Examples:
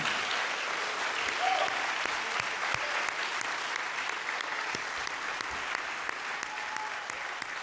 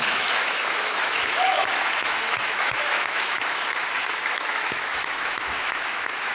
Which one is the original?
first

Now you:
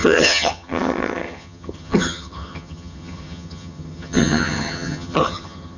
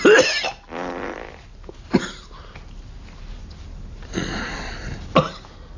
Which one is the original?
second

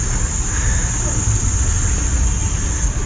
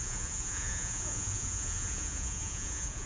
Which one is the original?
first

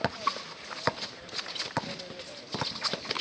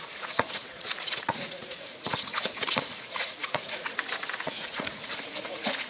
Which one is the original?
first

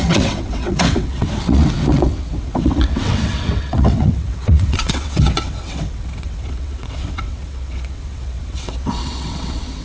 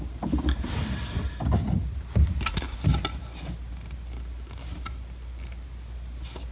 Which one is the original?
second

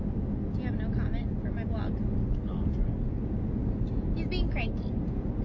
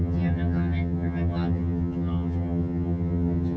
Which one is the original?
first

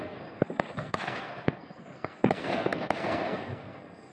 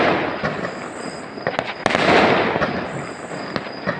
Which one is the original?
second